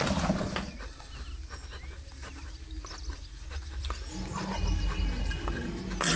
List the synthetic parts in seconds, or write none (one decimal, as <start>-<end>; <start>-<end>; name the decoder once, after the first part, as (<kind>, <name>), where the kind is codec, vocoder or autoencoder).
none